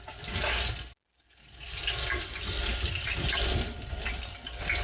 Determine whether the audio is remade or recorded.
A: recorded